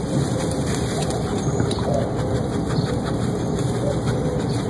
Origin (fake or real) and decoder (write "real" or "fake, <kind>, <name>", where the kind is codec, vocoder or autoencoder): real